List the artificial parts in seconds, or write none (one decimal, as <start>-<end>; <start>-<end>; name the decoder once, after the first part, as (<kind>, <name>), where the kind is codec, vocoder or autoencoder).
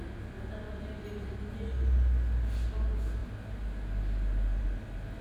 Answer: none